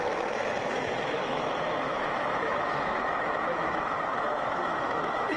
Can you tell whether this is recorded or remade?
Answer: remade